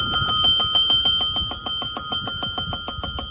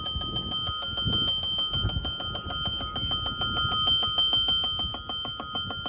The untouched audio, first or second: second